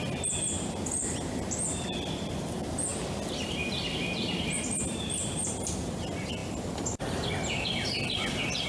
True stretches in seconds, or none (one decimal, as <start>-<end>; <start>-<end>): 0.0-8.7